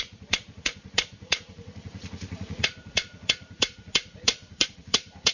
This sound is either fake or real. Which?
fake